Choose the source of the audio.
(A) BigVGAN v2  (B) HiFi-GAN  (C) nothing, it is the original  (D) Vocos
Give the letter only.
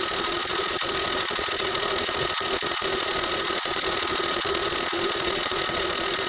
D